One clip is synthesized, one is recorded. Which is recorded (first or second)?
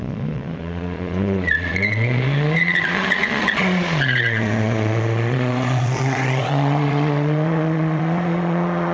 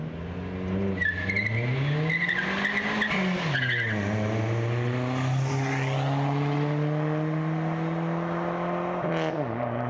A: second